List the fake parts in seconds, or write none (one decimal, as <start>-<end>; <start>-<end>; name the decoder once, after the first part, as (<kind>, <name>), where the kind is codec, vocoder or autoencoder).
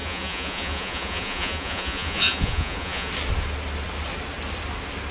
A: 0.0-3.1 (vocoder, Vocos)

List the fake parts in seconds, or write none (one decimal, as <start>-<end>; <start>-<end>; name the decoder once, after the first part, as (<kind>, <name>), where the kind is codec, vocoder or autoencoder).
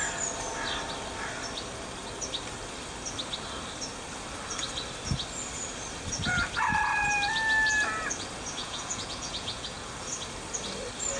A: 8.6-9.9 (vocoder, Vocos)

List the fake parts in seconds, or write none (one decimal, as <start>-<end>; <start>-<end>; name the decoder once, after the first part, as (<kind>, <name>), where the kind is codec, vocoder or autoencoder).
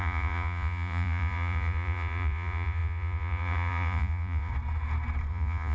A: 0.0-4.5 (vocoder, Vocos); 5.3-5.7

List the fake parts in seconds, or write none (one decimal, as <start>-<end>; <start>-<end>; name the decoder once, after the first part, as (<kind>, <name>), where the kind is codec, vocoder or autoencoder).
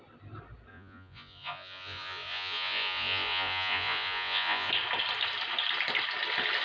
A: 0.7-4.7 (vocoder, Vocos)